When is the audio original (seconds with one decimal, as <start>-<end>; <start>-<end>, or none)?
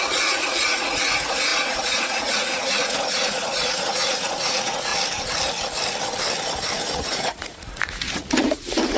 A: 4.9-6.8